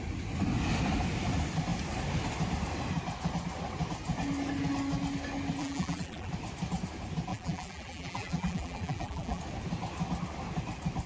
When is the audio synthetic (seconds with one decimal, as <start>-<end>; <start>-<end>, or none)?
5.6-6.3; 7.3-9.4

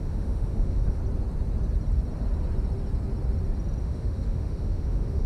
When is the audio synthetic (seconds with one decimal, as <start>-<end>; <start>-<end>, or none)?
0.0-1.0; 3.8-5.3

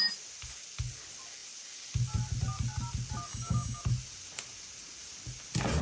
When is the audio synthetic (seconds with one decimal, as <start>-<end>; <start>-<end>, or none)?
3.3-3.8